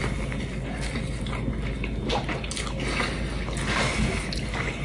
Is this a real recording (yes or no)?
yes